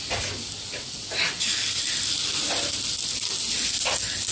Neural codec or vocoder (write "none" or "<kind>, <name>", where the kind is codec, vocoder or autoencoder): none